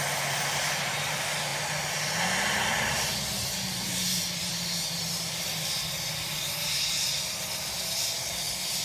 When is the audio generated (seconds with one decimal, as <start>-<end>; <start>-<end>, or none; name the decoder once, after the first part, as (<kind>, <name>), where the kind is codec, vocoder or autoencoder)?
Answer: none